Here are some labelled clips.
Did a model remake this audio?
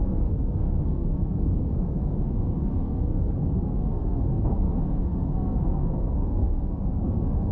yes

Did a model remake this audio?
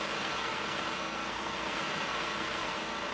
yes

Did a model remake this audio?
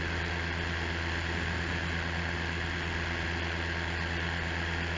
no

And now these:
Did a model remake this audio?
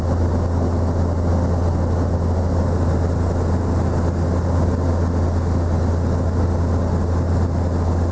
no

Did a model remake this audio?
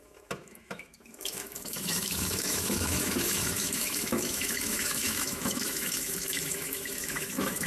yes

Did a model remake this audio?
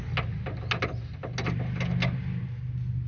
no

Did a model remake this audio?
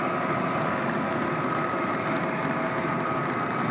no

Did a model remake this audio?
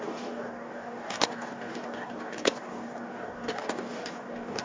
yes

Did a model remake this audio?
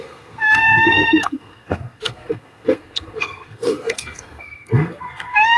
yes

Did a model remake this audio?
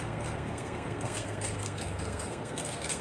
yes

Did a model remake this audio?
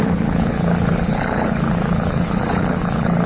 yes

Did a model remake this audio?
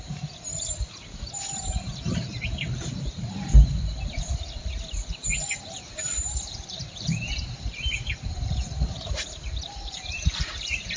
yes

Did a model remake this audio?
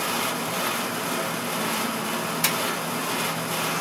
no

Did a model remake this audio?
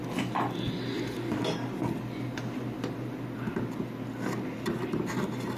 no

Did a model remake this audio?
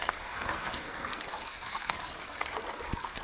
yes